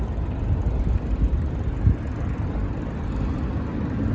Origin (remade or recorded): remade